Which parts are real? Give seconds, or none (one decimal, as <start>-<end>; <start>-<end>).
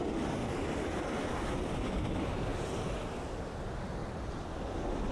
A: 0.0-0.4; 1.3-2.5; 3.5-4.0